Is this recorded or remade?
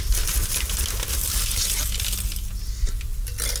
recorded